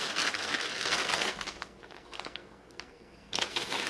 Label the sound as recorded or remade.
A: remade